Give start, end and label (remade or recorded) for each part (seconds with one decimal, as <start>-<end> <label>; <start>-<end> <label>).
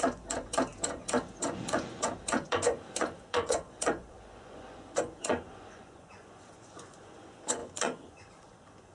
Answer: 0.0-8.9 remade